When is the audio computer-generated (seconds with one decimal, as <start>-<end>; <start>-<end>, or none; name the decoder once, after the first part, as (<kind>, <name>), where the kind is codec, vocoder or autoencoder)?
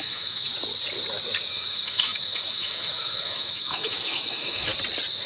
0.0-0.5 (autoencoder, DAC-VAE); 1.5-4.7